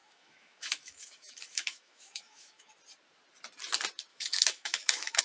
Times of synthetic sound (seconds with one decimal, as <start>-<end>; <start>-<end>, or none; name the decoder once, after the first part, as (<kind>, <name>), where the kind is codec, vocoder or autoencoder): 0.0-2.7 (autoencoder, DAC-VAE); 4.1-5.2